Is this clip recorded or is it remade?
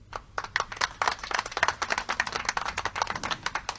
recorded